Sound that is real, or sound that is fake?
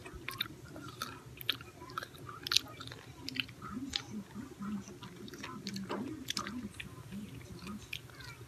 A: real